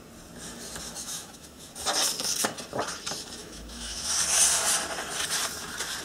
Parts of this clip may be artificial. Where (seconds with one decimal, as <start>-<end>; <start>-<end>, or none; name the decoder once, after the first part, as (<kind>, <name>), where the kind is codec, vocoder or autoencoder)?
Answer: 1.0-1.7 (autoencoder, DAC-VAE); 3.4-4.1